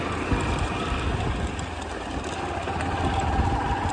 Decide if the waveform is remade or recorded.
recorded